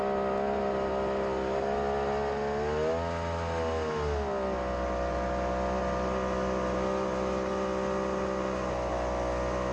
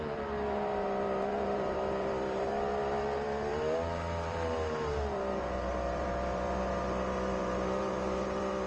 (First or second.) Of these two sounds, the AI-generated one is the second